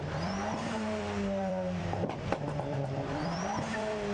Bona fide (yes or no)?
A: no